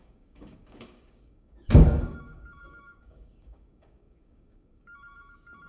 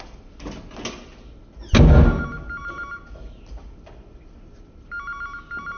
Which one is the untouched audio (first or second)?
second